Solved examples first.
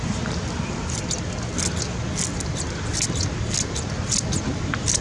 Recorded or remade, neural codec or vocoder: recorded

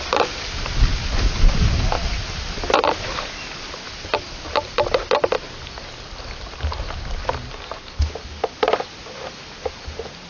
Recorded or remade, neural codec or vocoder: recorded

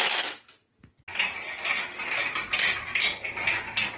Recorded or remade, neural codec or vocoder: recorded